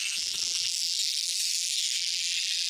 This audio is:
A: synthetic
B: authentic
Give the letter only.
A